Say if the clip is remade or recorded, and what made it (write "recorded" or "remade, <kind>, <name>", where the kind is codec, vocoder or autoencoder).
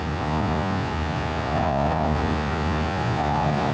remade, vocoder, Vocos